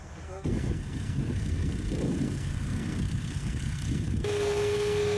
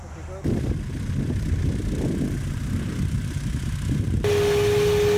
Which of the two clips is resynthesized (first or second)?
first